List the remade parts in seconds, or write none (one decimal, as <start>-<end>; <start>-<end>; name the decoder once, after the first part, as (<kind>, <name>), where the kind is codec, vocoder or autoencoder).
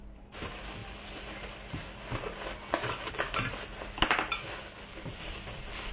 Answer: none